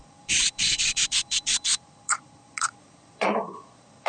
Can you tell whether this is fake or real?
fake